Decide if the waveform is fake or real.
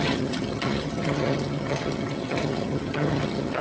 fake